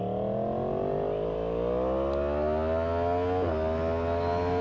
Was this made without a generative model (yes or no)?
yes